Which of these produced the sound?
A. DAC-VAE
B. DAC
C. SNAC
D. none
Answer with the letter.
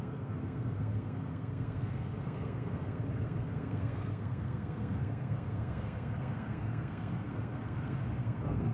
C